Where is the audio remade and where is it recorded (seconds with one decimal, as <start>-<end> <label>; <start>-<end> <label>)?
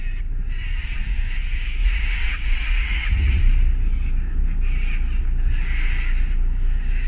0.0-0.7 recorded; 0.7-1.2 remade; 1.2-1.8 recorded; 1.8-3.4 remade; 3.4-7.1 recorded